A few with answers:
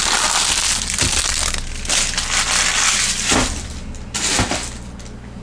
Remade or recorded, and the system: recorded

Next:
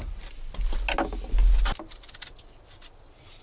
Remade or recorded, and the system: recorded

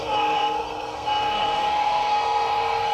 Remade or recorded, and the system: remade, codec, SNAC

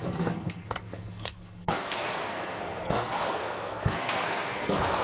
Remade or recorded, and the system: remade, codec, SNAC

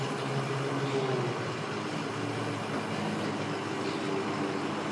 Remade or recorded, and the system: recorded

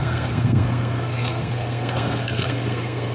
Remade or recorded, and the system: remade, codec, SNAC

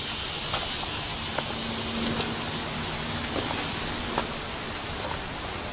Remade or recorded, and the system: recorded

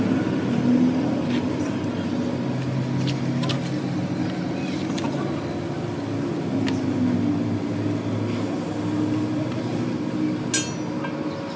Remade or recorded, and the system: recorded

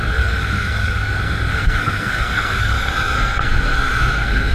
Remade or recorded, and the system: remade, codec, SNAC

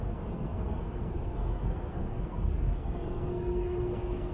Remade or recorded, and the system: remade, codec, SNAC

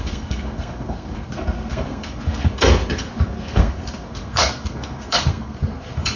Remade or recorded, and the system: remade, codec, SNAC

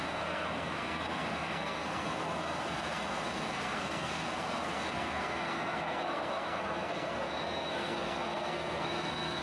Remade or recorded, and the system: remade, codec, SNAC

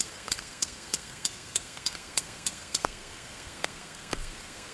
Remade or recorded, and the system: remade, codec, SNAC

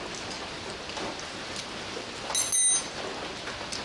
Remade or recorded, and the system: recorded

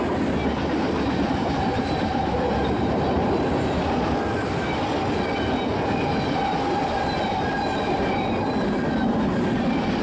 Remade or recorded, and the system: recorded